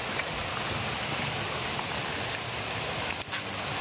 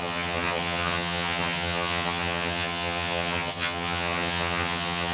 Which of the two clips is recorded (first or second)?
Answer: first